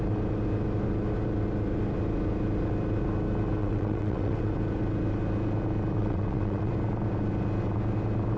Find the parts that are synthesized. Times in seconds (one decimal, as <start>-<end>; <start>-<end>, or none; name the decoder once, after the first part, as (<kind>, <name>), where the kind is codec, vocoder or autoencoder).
3.6-4.5 (vocoder, WaveNeXt); 6.0-6.7

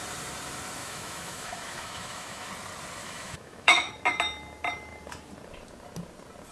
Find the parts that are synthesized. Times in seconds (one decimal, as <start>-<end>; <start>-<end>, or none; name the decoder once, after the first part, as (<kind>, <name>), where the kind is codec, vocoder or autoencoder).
0.8-2.5 (autoencoder, DAC-VAE); 3.0-3.9

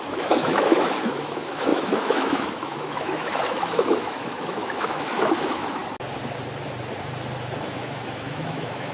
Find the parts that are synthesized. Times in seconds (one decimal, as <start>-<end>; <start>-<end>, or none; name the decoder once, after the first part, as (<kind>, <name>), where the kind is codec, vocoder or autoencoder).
0.0-5.8 (autoencoder, DAC-VAE); 7.7-8.9

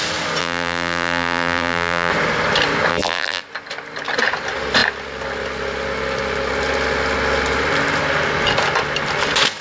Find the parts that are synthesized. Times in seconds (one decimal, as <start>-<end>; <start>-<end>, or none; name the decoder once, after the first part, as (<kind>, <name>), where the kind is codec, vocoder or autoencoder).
0.4-2.1 (vocoder, BigVGAN v2); 2.9-3.4

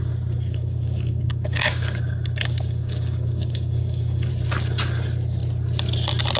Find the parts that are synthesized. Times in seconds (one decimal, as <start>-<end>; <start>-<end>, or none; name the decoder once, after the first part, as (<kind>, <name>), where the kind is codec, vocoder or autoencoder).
0.5-4.3 (codec, DAC)

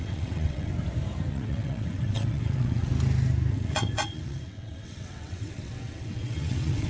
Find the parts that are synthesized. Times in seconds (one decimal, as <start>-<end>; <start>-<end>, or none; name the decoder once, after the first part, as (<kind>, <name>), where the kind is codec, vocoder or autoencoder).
0.0-0.7 (vocoder, WaveNeXt); 1.3-2.9; 3.5-6.9

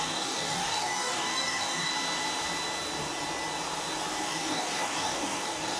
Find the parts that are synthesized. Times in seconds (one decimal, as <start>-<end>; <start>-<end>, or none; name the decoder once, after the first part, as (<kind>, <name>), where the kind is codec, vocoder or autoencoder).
0.0-1.9 (codec, DAC); 4.2-5.8